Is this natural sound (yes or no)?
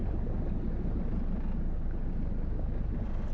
yes